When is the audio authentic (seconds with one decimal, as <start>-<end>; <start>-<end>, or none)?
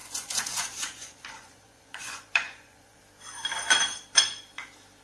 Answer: 3.0-5.0